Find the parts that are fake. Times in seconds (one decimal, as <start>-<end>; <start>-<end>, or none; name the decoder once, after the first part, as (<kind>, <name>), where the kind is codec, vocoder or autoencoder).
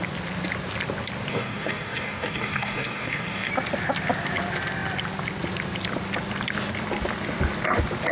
1.3-3.5 (codec, DAC)